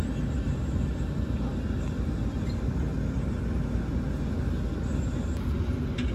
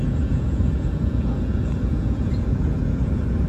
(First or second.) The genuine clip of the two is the first